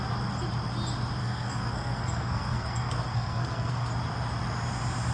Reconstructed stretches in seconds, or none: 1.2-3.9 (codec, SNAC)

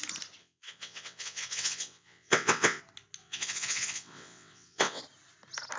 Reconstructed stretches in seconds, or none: 0.4-2.8 (vocoder, WaveNeXt); 3.2-5.0

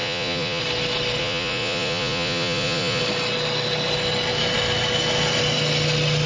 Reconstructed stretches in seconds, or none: 0.0-0.6 (vocoder, Vocos); 1.2-3.0

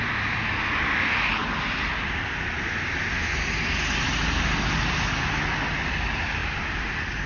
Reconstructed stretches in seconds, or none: none